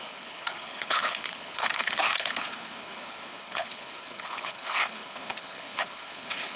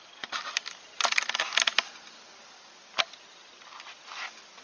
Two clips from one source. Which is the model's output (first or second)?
first